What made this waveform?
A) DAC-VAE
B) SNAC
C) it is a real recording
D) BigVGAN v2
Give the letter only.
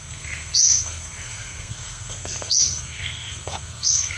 B